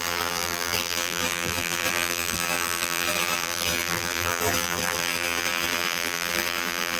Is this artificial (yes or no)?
yes